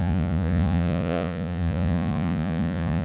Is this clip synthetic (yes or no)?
yes